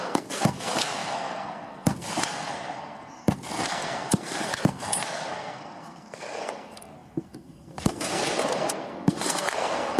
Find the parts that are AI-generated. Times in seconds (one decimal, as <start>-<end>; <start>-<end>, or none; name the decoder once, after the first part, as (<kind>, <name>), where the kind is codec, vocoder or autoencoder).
0.0-10.0 (codec, SNAC)